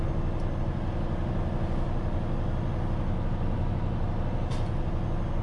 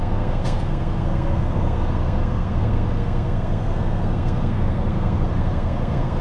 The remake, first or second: second